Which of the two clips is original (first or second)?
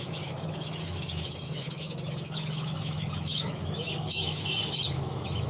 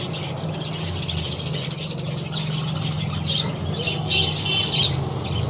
second